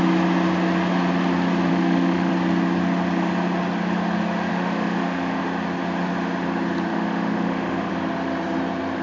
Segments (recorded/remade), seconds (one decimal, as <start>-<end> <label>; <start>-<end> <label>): 0.0-1.7 recorded; 1.7-2.3 remade; 2.3-4.5 recorded; 4.5-5.4 remade; 5.4-6.9 recorded; 6.9-7.9 remade; 7.9-9.0 recorded